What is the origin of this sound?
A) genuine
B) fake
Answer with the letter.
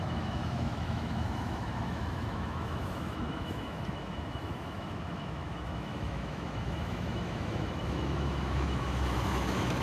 B